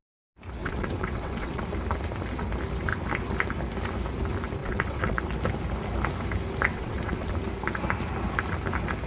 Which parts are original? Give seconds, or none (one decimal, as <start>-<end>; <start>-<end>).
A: 0.0-0.6; 1.6-4.6; 5.2-6.7; 7.3-9.1

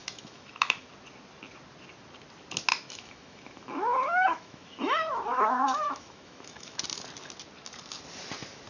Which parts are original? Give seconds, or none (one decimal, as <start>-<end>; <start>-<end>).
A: 0.9-2.7; 6.8-8.7